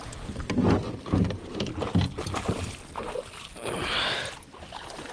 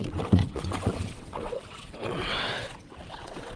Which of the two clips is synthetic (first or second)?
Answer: second